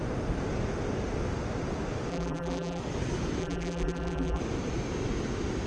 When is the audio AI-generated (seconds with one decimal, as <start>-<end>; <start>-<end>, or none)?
2.1-2.8; 3.4-4.4